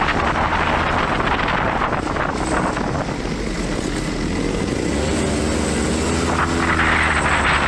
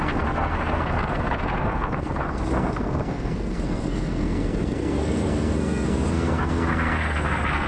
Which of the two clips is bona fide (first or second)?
first